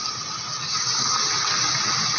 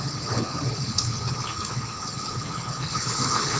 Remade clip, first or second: second